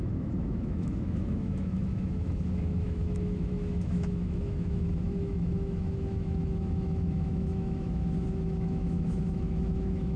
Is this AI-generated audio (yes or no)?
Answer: yes